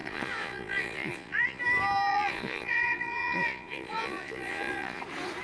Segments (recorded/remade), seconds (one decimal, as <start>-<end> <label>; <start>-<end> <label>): 0.0-1.6 remade; 1.6-2.1 recorded; 2.1-5.0 remade; 5.0-5.4 recorded